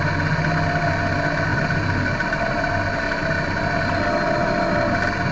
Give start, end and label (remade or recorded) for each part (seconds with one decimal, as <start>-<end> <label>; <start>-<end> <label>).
0.0-1.5 recorded; 1.5-2.7 remade; 2.7-5.3 recorded